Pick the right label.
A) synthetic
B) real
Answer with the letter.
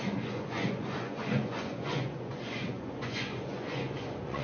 A